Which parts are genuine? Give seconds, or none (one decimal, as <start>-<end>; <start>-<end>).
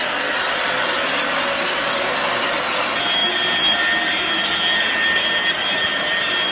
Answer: 0.0-6.5